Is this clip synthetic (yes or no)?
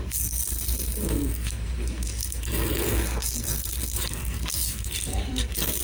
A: yes